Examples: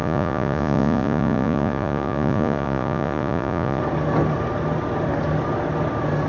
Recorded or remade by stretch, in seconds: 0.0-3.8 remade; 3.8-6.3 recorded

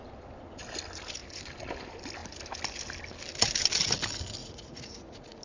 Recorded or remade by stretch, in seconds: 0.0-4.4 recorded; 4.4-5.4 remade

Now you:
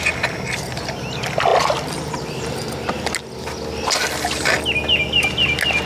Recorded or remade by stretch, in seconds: 0.0-5.9 recorded

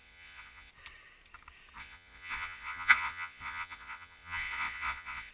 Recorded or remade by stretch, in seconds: 0.0-0.7 remade; 0.7-1.8 recorded; 1.8-5.3 remade

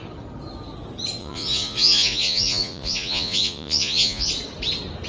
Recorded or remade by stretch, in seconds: 0.0-1.2 recorded; 1.2-4.3 remade; 4.3-5.1 recorded